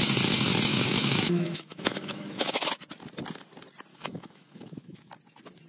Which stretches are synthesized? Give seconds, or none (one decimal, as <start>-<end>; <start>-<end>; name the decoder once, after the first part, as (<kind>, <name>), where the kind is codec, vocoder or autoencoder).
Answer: 0.7-2.7 (autoencoder, DAC-VAE); 3.9-5.1